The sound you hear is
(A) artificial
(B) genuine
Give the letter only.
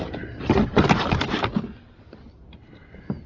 B